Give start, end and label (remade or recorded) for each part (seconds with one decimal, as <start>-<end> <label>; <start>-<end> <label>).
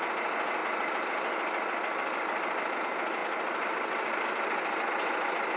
0.0-5.6 recorded